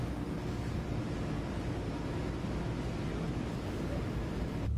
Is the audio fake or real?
real